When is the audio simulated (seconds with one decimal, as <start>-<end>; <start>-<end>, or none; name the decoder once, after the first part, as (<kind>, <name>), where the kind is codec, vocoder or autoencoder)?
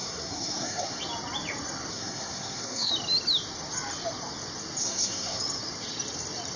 0.0-1.0 (codec, SNAC); 1.9-2.9; 4.8-5.4